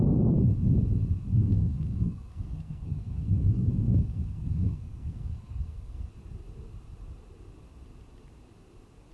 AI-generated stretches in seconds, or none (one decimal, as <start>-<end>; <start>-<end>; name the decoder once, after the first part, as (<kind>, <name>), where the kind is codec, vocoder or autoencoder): 1.3-6.1 (codec, SNAC)